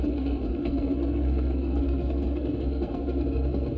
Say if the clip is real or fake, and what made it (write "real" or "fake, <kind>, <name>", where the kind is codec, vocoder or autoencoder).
fake, codec, SNAC